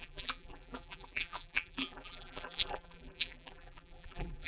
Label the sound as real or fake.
fake